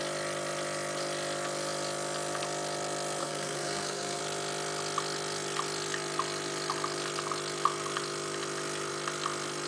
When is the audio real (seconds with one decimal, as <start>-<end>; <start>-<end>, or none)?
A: 0.0-3.2; 4.2-9.7